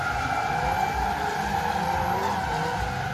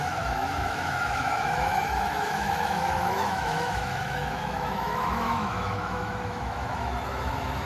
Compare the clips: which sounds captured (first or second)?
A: first